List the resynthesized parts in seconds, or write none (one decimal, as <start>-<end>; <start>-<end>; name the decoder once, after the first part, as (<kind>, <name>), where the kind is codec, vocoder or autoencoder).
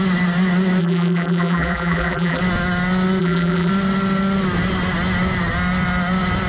0.8-2.4 (vocoder, BigVGAN v2); 3.2-3.7